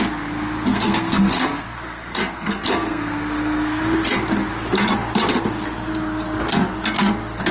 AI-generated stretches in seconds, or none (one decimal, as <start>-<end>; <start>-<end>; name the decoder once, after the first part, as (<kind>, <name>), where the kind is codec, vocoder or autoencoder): 0.7-3.8 (codec, SNAC)